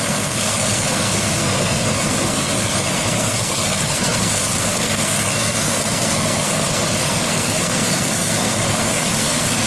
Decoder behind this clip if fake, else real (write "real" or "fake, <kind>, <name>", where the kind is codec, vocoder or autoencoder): fake, codec, SNAC